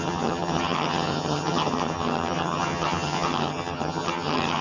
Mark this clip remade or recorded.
remade